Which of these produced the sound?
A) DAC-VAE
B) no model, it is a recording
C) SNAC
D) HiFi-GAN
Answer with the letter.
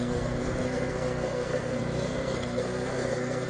C